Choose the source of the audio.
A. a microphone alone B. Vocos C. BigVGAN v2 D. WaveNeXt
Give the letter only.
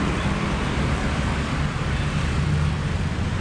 A